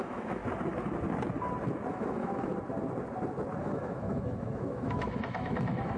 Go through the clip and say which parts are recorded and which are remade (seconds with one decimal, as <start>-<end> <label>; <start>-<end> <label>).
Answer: 0.0-0.4 remade; 0.4-1.9 recorded; 1.9-2.5 remade; 2.5-3.6 recorded; 3.6-6.0 remade